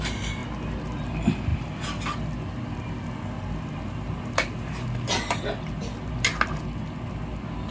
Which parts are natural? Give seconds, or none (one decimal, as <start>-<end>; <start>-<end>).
0.0-7.7